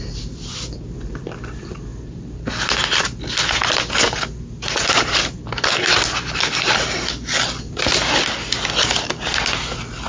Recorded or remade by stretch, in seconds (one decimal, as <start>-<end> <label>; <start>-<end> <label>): 0.0-10.1 recorded